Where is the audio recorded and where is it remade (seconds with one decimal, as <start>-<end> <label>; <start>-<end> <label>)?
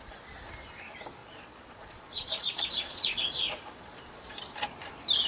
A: 0.0-1.2 recorded; 1.2-4.4 remade; 4.4-5.3 recorded